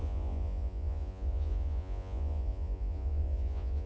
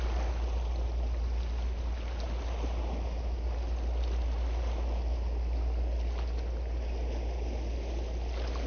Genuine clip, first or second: second